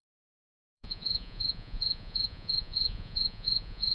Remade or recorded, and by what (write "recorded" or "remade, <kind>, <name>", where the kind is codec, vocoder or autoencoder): remade, vocoder, Vocos